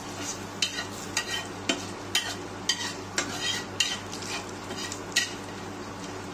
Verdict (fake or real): real